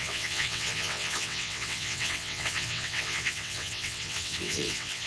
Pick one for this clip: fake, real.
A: fake